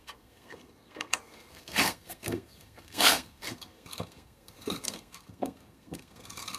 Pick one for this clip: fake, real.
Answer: fake